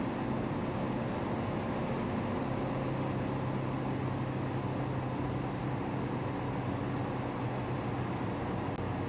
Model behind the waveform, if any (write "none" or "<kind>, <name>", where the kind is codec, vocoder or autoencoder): none